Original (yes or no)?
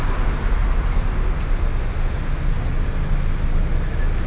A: yes